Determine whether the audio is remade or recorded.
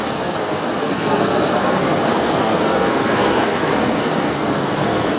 remade